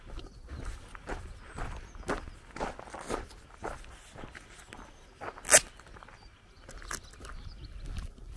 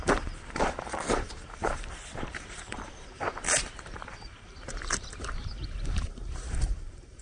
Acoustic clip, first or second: first